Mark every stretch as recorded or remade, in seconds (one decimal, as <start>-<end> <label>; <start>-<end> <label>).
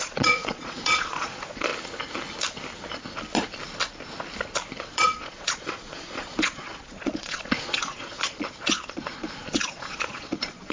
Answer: 0.0-1.7 remade; 1.7-4.8 recorded; 4.8-10.7 remade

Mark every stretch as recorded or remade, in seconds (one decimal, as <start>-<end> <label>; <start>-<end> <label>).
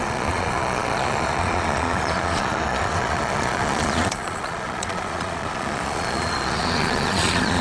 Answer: 0.0-7.6 remade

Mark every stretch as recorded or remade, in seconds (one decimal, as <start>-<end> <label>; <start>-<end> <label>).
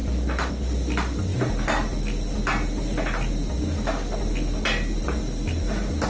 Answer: 0.0-6.1 recorded